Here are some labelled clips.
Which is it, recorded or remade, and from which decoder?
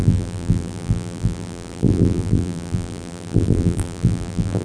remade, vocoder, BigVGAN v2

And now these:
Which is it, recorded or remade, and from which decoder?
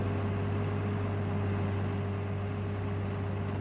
recorded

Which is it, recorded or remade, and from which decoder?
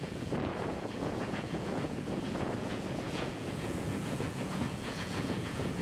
remade, vocoder, Vocos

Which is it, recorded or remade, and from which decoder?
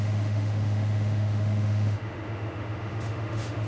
remade, autoencoder, DAC-VAE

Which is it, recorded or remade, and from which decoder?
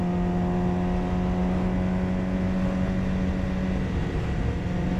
recorded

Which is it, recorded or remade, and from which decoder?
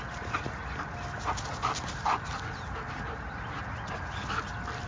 recorded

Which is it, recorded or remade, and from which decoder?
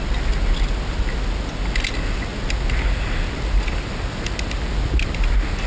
recorded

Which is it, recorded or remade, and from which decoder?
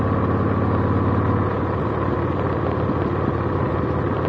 recorded